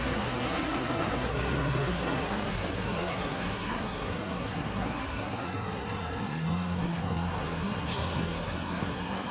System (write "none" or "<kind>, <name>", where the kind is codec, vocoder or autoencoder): codec, SNAC